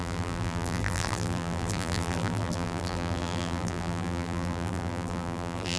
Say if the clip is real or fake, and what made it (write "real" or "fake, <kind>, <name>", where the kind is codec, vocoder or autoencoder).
fake, vocoder, BigVGAN v2